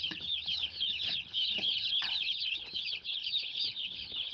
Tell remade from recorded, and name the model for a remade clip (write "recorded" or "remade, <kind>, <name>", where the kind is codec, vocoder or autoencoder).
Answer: remade, codec, HILCodec